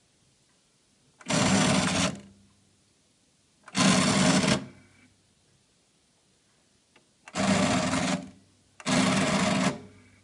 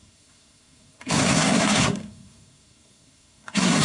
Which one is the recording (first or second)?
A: first